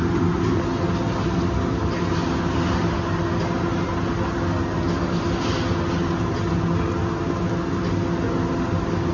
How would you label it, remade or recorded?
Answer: recorded